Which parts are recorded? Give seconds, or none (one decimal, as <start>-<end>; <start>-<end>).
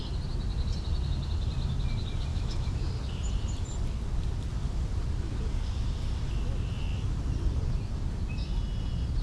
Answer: 0.0-2.3; 2.9-9.2